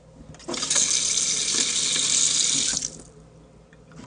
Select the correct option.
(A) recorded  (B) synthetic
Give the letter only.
A